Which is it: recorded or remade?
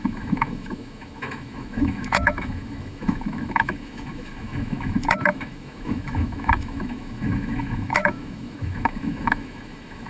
remade